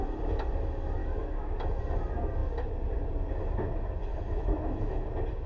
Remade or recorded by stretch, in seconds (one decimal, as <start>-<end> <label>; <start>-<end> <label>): 0.0-1.0 recorded; 1.0-1.8 remade; 1.8-4.1 recorded; 4.1-5.1 remade; 5.1-5.5 recorded